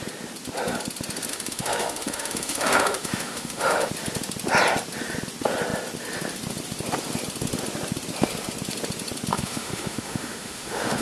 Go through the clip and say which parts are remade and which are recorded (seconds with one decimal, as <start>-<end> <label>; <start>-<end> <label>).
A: 0.0-1.3 recorded; 1.3-3.9 remade; 3.9-9.3 recorded; 9.3-11.0 remade